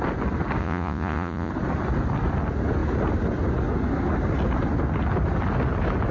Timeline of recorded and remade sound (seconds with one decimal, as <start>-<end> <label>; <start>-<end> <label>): 0.0-0.6 recorded; 0.6-1.5 remade; 1.5-6.1 recorded